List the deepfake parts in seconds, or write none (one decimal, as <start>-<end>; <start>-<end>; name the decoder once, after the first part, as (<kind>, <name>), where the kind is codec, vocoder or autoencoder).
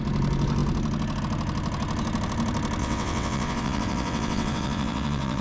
2.8-5.4 (vocoder, WaveNeXt)